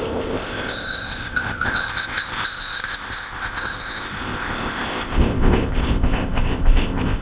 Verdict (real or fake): fake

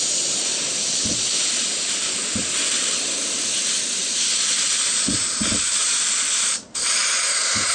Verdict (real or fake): real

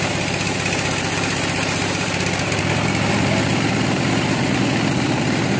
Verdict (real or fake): fake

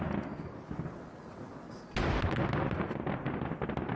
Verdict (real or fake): real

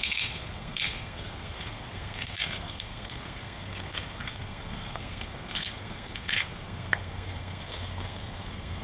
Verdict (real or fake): fake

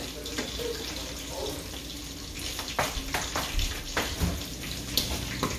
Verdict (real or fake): real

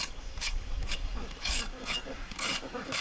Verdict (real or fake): fake